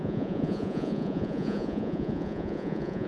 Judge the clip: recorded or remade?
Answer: remade